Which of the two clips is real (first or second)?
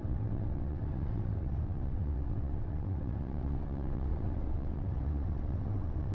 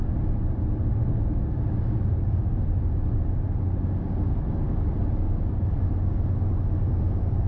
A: second